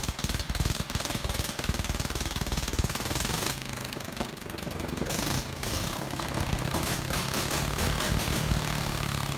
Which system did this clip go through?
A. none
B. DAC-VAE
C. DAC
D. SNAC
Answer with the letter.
C